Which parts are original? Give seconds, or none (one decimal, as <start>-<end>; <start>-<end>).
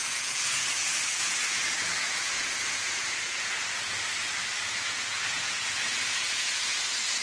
none